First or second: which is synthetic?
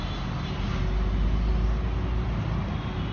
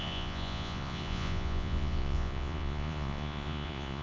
second